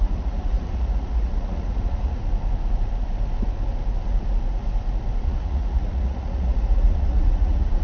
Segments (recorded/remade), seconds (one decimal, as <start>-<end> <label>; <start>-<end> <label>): 0.0-2.2 remade; 2.2-5.2 recorded; 5.2-7.8 remade

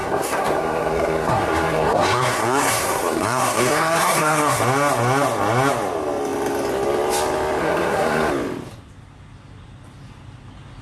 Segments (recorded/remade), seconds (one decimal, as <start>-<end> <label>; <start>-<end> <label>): 0.0-4.6 remade; 4.6-7.6 recorded; 7.6-8.3 remade; 8.3-10.8 recorded

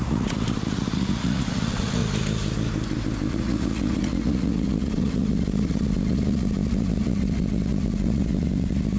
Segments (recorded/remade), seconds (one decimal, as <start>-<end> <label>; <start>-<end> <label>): 0.0-2.0 remade; 2.0-3.3 recorded; 3.3-9.0 remade

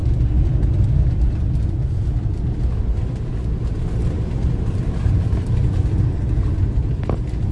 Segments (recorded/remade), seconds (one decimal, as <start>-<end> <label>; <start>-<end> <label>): 0.0-7.5 recorded

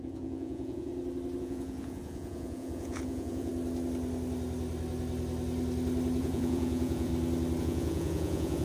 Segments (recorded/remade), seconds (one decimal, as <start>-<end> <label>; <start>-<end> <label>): 0.0-0.9 remade; 0.9-1.4 recorded; 1.4-3.5 remade; 3.5-6.2 recorded; 6.2-7.1 remade; 7.1-7.6 recorded; 7.6-8.6 remade

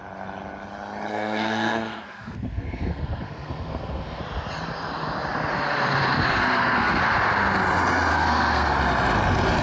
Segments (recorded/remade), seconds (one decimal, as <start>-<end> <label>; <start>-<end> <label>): 0.0-1.1 recorded; 1.1-4.2 remade; 4.2-6.4 recorded; 6.4-7.0 remade; 7.0-8.1 recorded; 8.1-8.8 remade; 8.8-9.6 recorded

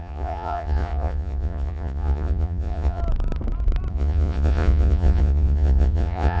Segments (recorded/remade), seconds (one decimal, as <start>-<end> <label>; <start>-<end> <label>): 0.0-3.0 remade; 3.0-3.9 recorded; 3.9-6.4 remade